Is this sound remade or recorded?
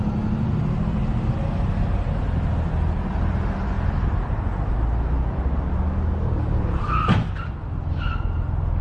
recorded